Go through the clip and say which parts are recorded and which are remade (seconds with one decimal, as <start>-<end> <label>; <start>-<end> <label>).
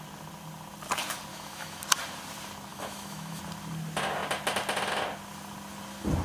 0.0-1.3 recorded; 1.3-1.8 remade; 1.8-2.7 recorded; 2.7-3.4 remade; 3.4-6.2 recorded